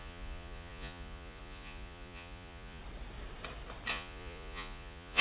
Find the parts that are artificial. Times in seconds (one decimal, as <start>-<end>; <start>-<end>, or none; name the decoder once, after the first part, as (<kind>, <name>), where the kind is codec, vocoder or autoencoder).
0.0-2.8 (vocoder, Vocos); 3.9-5.2